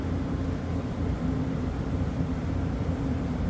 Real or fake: fake